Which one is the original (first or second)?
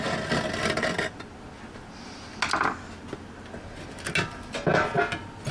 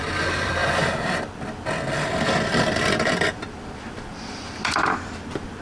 first